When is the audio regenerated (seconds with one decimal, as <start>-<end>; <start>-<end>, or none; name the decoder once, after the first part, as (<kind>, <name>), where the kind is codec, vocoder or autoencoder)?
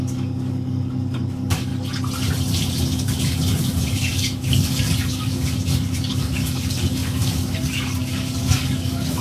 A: 0.0-1.7 (codec, DAC); 2.7-9.2